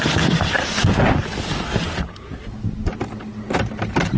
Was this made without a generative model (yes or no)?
yes